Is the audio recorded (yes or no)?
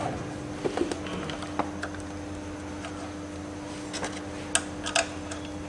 yes